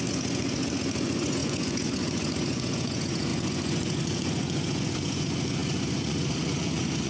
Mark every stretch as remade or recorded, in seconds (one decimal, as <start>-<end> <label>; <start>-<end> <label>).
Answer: 0.0-7.1 remade